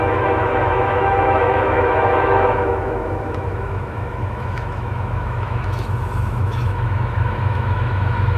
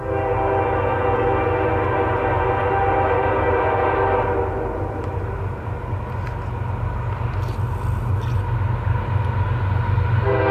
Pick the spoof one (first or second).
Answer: first